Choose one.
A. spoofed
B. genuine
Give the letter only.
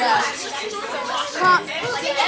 B